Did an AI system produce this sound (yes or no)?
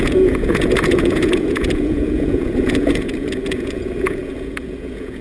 yes